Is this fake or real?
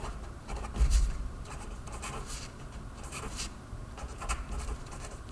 fake